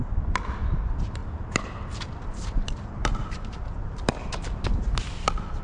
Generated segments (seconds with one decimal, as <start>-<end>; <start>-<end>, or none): 1.2-4.5